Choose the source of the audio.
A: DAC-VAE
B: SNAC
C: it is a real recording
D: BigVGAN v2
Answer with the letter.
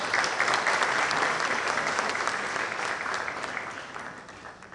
D